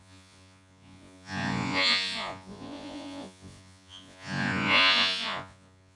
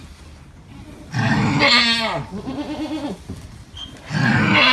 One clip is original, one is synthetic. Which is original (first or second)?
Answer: second